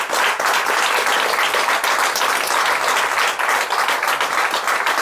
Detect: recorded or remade recorded